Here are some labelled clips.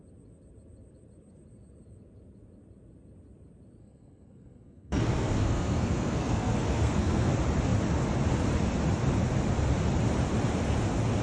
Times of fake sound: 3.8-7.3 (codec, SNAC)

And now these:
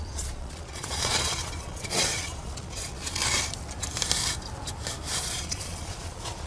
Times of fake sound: 0.0-3.2 (vocoder, Vocos); 5.2-6.5

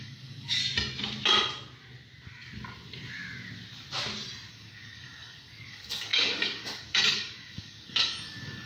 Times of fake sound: 0.0-0.6 (codec, DAC); 4.5-8.7

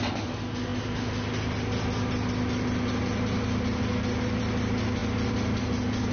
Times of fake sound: none

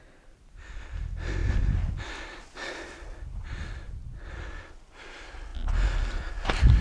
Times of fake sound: none

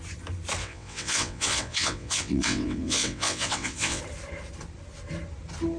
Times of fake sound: 0.6-4.0 (vocoder, WaveNeXt)